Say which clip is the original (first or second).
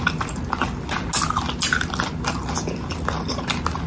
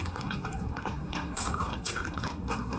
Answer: first